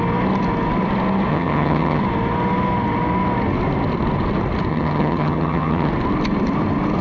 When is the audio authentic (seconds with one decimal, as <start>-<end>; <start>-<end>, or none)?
0.0-1.3; 2.0-4.7; 5.9-7.0